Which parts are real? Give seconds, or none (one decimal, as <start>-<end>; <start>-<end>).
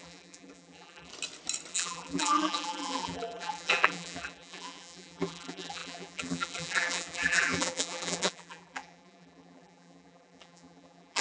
1.1-1.7